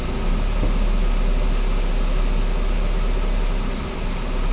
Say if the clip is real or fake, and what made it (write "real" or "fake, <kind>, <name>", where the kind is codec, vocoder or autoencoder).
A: real